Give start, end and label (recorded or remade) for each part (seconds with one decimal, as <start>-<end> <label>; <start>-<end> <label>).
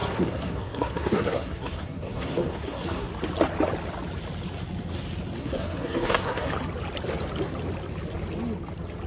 0.0-3.1 remade; 3.1-5.4 recorded; 5.4-6.5 remade; 6.5-9.1 recorded